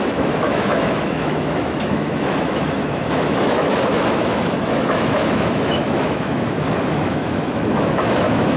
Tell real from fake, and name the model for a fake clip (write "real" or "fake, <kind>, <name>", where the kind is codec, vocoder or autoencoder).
fake, autoencoder, DAC-VAE